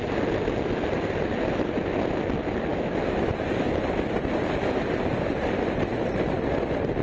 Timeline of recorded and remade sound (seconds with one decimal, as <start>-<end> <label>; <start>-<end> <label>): 0.0-2.7 recorded; 2.7-3.3 remade; 3.3-7.0 recorded